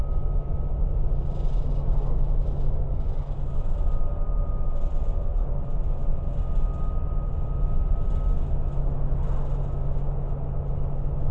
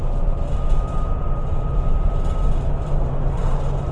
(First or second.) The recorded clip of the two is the first